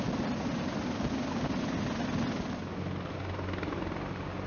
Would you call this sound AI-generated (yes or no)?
no